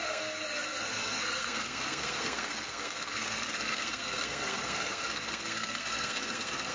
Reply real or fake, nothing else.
fake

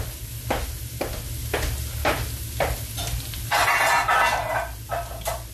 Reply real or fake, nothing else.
real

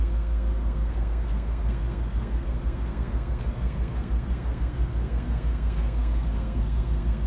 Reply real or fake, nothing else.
fake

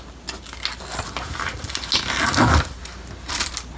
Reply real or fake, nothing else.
real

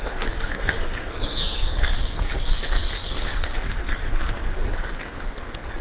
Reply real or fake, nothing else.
fake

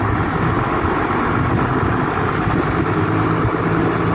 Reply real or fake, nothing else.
real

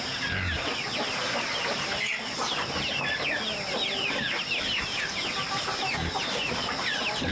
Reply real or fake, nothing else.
real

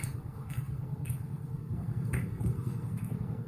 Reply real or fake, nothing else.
fake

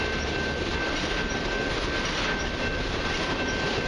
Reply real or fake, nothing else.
real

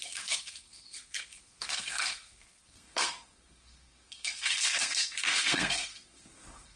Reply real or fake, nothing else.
fake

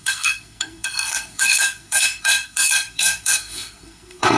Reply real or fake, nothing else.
fake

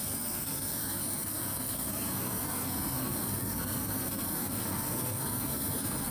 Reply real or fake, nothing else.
fake